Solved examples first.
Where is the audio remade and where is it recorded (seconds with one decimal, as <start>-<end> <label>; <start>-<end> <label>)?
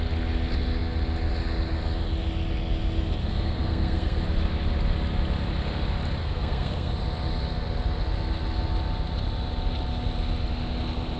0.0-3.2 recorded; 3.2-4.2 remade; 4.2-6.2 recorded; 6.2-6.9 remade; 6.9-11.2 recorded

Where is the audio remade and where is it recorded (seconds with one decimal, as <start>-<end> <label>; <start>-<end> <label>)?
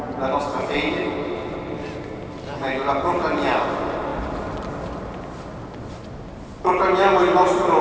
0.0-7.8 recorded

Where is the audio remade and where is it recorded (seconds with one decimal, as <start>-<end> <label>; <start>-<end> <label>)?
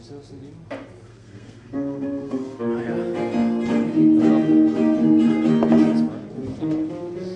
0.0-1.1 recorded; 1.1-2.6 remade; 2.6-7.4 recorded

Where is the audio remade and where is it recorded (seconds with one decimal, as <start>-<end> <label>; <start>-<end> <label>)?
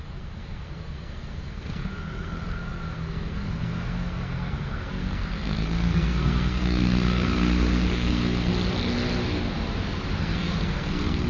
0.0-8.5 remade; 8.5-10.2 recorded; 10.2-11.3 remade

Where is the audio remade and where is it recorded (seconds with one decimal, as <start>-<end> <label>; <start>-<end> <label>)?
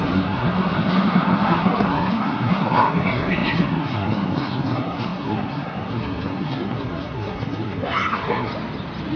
0.0-8.5 remade; 8.5-9.2 recorded